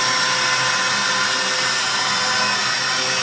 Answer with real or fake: real